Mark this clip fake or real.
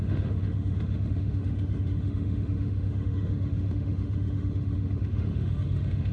fake